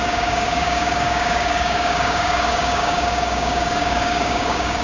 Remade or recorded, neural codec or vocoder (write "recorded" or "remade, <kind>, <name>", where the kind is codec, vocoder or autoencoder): remade, codec, DAC